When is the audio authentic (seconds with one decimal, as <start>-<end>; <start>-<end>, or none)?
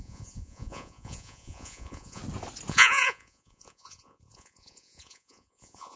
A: 2.2-2.7